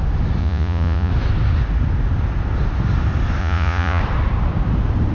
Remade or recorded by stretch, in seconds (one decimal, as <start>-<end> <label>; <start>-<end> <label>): 0.0-0.4 recorded; 0.4-1.1 remade; 1.1-3.4 recorded; 3.4-4.0 remade; 4.0-5.1 recorded